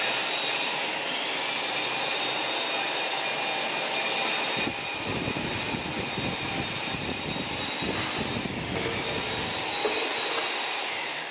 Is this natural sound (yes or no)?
yes